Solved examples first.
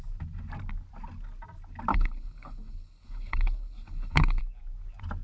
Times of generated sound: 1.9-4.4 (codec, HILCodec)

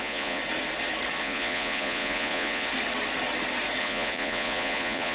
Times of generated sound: 0.0-0.4 (vocoder, Vocos); 1.2-2.7; 3.8-5.1

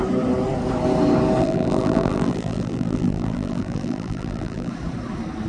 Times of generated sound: 1.4-4.7 (vocoder, BigVGAN v2)

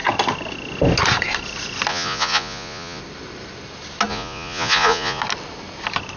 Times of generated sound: 1.9-3.0 (vocoder, Vocos); 4.1-5.2

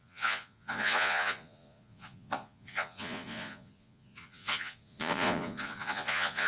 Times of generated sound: 0.0-6.5 (vocoder, Vocos)

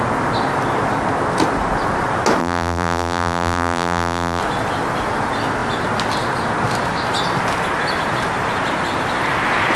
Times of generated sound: 2.4-4.4 (vocoder, BigVGAN v2)

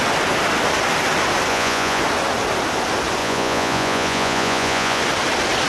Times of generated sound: 1.5-2.0 (vocoder, Vocos); 3.2-5.0